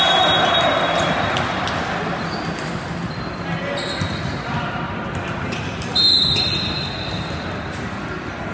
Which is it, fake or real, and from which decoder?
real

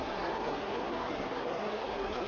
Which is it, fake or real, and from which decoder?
fake, codec, SNAC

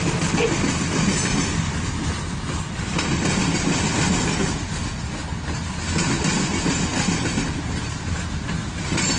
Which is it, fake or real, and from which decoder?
real